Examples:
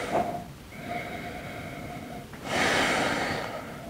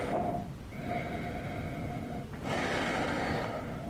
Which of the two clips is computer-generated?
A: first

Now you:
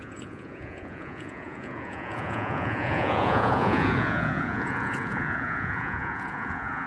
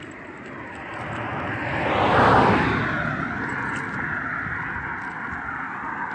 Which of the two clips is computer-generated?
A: first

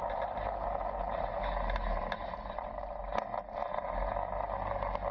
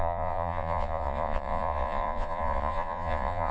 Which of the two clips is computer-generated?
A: second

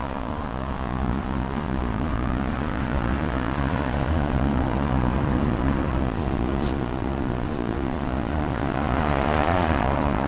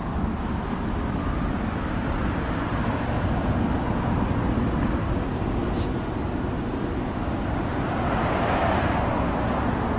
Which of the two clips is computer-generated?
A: first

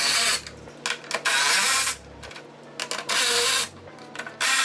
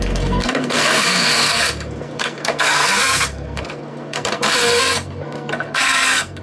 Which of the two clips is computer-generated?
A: second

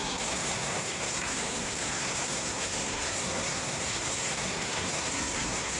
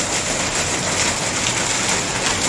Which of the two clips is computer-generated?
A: first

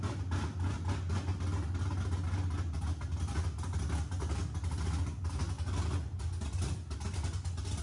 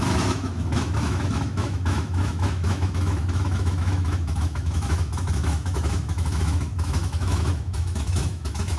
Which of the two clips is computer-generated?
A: second